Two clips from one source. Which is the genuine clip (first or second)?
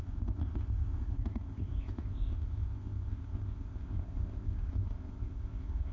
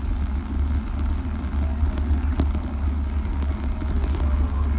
second